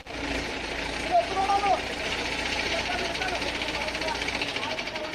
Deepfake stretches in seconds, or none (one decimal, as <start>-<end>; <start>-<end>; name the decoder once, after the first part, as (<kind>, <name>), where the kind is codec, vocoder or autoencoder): 0.0-3.1 (vocoder, BigVGAN v2)